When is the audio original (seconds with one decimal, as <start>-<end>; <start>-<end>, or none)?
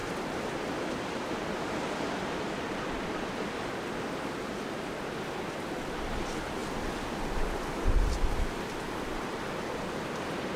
0.0-10.6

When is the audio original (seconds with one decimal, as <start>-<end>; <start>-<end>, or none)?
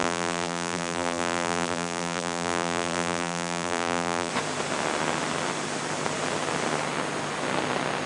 4.3-8.1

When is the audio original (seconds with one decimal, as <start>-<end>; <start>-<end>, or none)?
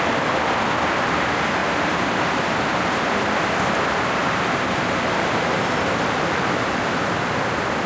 0.0-1.6; 3.0-4.2; 7.4-7.9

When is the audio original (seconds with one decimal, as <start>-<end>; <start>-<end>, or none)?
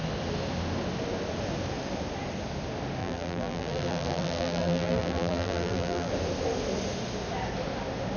0.0-3.0; 6.1-8.2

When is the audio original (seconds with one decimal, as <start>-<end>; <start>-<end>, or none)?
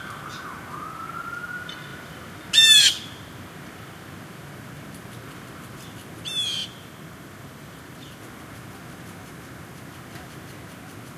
0.0-6.6; 8.2-11.2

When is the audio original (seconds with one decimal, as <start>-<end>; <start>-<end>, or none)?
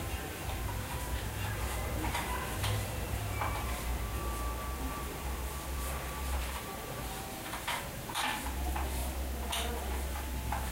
3.9-4.9; 9.0-9.7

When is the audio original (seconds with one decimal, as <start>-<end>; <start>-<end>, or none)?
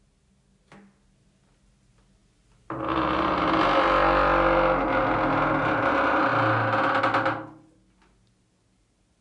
0.0-9.2